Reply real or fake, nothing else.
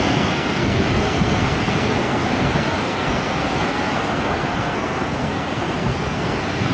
fake